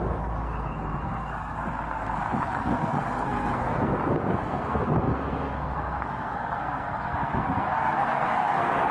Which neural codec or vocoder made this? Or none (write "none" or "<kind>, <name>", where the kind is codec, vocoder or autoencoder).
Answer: codec, SNAC